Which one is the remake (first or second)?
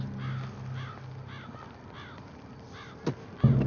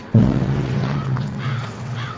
second